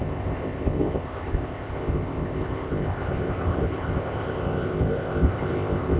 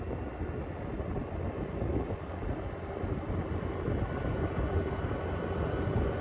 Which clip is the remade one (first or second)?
first